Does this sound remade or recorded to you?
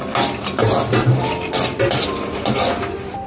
recorded